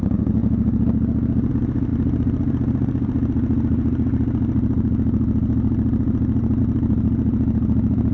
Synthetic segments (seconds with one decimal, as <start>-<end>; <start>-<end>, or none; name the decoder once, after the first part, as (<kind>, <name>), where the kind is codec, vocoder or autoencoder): 0.0-0.4 (vocoder, BigVGAN v2); 1.5-8.1